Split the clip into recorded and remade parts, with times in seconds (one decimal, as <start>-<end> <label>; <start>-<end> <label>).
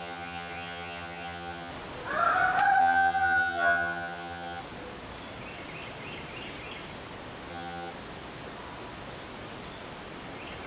0.0-1.7 remade; 1.7-2.8 recorded; 2.8-4.6 remade; 4.6-7.5 recorded; 7.5-7.9 remade; 7.9-10.7 recorded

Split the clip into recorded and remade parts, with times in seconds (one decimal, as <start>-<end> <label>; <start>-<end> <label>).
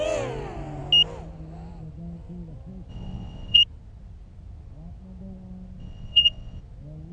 0.0-2.9 recorded; 2.9-3.6 remade; 3.6-5.8 recorded; 5.8-6.6 remade; 6.6-7.1 recorded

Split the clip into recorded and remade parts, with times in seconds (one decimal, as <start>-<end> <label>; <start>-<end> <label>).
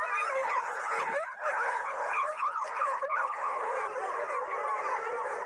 0.0-0.4 recorded; 0.4-3.7 remade; 3.7-5.5 recorded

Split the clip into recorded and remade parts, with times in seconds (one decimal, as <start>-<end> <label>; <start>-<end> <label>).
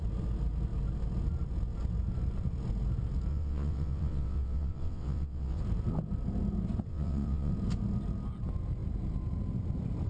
0.0-3.3 recorded; 3.3-5.6 remade; 5.6-6.9 recorded; 6.9-7.5 remade; 7.5-10.1 recorded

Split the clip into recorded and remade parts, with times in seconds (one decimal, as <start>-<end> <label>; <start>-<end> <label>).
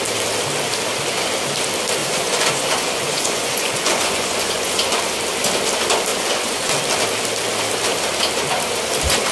0.0-2.0 recorded; 2.0-5.0 remade; 5.0-6.1 recorded; 6.1-6.7 remade; 6.7-9.3 recorded